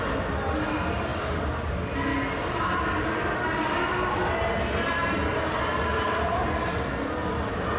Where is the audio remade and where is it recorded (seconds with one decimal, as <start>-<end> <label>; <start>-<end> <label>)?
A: 0.0-7.8 recorded